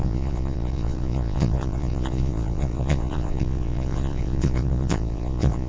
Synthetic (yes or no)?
yes